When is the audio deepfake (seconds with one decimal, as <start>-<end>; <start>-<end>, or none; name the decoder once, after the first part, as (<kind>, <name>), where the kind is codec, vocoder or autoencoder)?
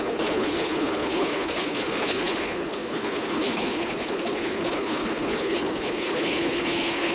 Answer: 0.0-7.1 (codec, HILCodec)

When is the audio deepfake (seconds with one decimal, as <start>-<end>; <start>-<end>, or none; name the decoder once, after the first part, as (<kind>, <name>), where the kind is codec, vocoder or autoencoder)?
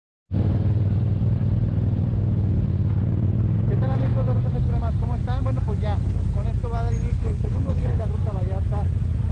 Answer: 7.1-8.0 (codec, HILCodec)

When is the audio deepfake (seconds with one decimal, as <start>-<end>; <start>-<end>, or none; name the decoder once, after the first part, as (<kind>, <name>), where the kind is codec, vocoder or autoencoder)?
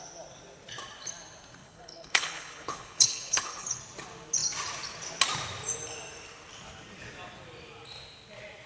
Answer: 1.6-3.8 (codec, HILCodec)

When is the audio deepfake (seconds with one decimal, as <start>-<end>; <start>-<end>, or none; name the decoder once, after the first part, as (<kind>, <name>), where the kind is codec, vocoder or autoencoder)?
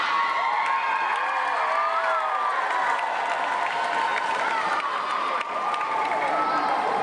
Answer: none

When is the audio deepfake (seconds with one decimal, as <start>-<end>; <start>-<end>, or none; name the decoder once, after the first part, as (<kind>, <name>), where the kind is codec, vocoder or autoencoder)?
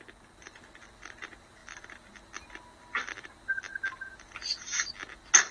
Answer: none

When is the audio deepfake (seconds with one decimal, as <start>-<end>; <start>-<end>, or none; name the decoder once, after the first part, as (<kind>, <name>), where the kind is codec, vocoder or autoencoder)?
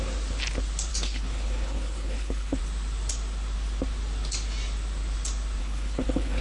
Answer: 0.9-2.6 (codec, HILCodec); 5.6-6.4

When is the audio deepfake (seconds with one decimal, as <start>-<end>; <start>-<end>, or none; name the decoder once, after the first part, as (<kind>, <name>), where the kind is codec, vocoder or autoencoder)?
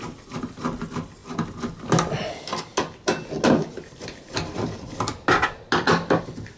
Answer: none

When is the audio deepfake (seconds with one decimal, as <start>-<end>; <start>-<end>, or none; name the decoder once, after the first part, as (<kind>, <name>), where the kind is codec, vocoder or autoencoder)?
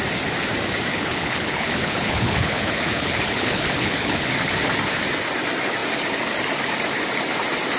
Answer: 0.9-4.3 (codec, HILCodec)